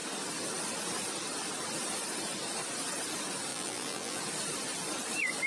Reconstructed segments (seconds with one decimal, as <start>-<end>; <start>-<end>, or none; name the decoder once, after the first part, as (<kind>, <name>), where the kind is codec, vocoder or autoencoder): 3.5-4.2 (vocoder, BigVGAN v2)